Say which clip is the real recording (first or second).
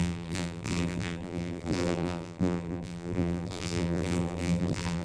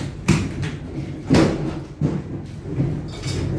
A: second